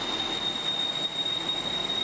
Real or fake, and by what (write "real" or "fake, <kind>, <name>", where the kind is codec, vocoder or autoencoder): real